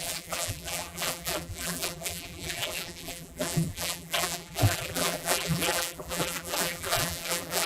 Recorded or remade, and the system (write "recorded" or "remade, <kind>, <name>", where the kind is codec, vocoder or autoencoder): remade, vocoder, BigVGAN v2